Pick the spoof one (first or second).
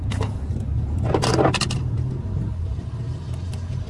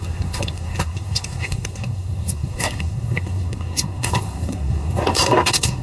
second